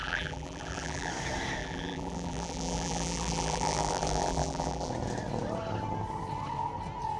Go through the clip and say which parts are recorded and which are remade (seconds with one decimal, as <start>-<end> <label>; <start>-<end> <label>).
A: 0.0-1.1 remade; 1.1-1.6 recorded; 1.6-4.9 remade; 4.9-7.2 recorded